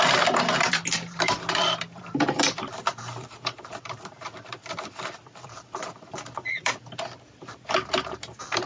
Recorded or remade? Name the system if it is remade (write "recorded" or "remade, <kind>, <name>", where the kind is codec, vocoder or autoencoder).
remade, vocoder, BigVGAN v2